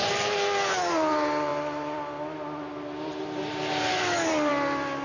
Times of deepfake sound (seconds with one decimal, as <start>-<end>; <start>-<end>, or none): none